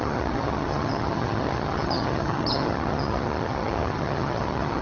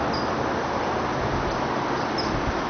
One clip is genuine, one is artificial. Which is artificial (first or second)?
first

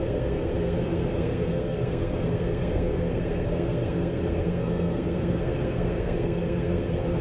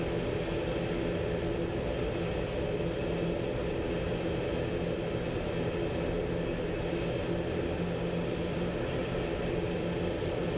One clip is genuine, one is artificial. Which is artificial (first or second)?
first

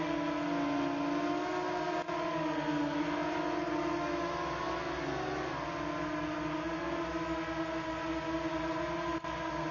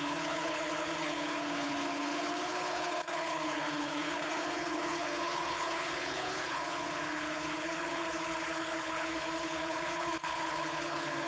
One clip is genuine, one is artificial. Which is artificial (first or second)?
second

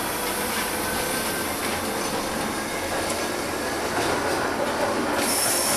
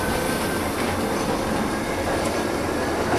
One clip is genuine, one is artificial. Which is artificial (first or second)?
second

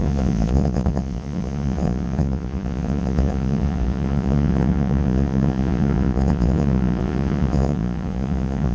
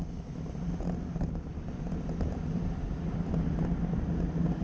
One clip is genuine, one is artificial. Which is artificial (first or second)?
first